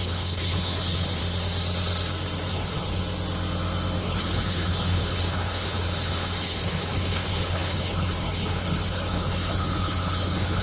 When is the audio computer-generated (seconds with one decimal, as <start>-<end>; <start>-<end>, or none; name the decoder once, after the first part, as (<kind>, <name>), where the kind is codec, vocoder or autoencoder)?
0.0-1.2 (codec, HILCodec); 2.5-3.0; 4.0-10.6